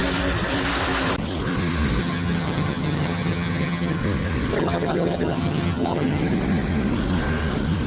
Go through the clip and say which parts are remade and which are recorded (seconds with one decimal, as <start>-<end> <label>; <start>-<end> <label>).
0.0-2.0 recorded; 2.0-4.0 remade; 4.0-4.6 recorded; 4.6-6.2 remade; 6.2-7.9 recorded